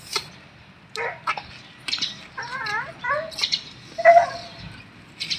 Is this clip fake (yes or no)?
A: no